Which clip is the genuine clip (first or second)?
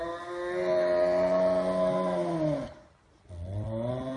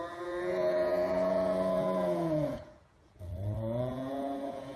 first